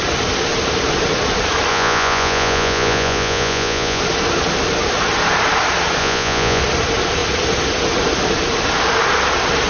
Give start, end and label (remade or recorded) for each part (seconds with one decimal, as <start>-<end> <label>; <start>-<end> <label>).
0.0-1.7 recorded; 1.7-4.0 remade; 4.0-6.0 recorded; 6.0-6.6 remade; 6.6-9.7 recorded